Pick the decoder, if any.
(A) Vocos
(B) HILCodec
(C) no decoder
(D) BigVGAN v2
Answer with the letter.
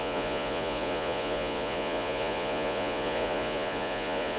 A